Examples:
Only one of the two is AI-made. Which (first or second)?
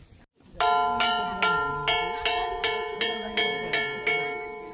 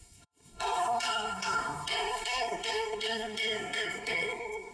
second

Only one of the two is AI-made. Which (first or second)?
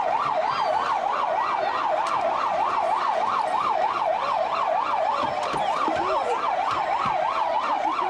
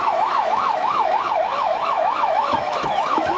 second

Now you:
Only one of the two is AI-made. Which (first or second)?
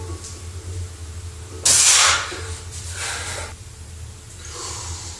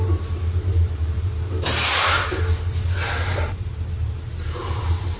second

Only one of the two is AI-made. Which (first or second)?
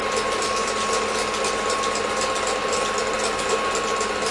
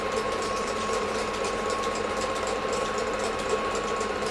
second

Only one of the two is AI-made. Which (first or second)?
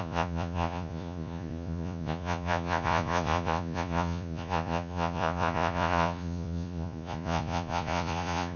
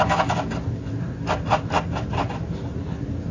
first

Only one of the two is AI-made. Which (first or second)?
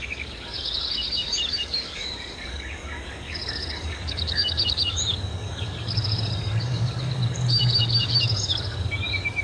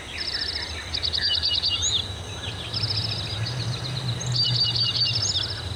first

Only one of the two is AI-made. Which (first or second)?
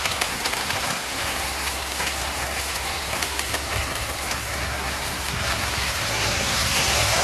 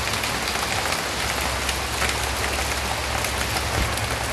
first